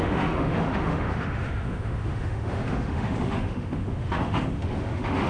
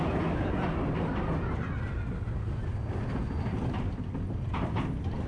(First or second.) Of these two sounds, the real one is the second